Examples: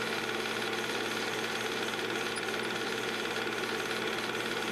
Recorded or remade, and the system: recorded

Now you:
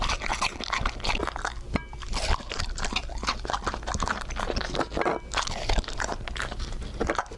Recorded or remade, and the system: recorded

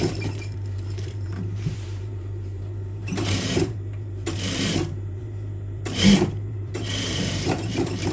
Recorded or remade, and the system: remade, vocoder, BigVGAN v2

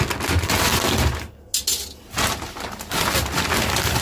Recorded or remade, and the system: recorded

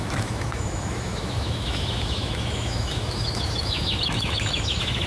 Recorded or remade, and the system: remade, autoencoder, DAC-VAE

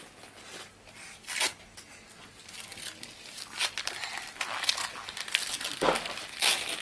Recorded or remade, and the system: recorded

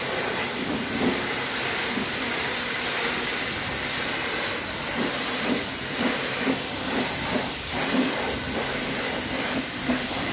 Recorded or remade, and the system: recorded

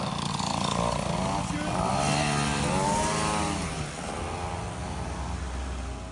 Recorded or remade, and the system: recorded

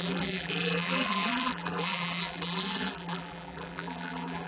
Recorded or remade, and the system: remade, vocoder, BigVGAN v2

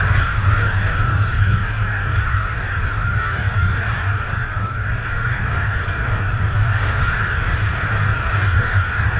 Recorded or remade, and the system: remade, codec, DAC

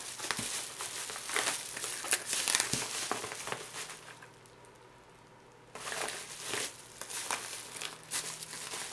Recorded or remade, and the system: recorded